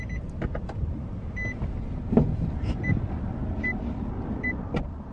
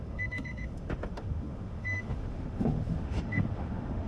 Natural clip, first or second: first